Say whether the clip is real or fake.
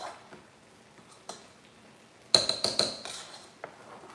real